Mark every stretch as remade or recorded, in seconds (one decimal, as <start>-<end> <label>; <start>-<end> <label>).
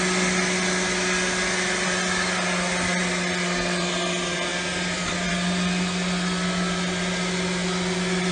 0.0-8.3 recorded